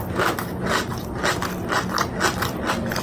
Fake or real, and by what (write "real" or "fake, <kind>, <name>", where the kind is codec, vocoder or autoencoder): real